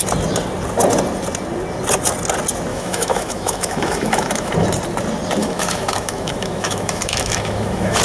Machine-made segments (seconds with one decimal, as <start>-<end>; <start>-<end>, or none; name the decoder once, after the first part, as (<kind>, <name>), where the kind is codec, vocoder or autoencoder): 2.7-4.5 (autoencoder, DAC-VAE); 5.4-8.0